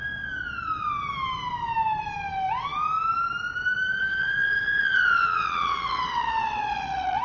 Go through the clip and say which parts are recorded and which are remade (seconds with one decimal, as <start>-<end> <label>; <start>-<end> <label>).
0.0-4.0 recorded; 4.0-7.2 remade